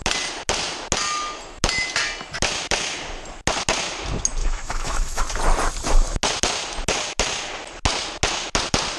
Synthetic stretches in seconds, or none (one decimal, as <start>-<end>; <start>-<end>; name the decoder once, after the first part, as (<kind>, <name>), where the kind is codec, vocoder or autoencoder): 4.4-5.2 (autoencoder, DAC-VAE)